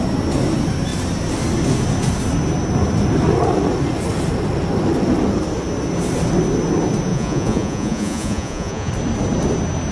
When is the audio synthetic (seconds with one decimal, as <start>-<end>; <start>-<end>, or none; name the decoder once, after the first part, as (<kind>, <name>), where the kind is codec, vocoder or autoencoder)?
7.1-8.9 (vocoder, Vocos)